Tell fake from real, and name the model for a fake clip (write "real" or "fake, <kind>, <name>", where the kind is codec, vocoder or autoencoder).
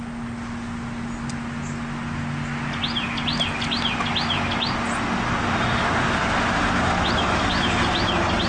real